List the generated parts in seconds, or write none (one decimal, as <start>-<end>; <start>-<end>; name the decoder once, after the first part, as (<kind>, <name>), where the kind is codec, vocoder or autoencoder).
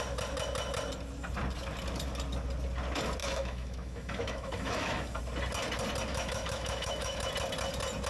3.2-5.2 (autoencoder, DAC-VAE); 6.1-7.3